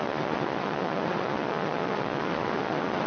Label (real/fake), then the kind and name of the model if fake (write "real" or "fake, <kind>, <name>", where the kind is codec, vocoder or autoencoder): fake, vocoder, Vocos